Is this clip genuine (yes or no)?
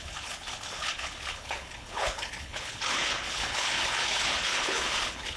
no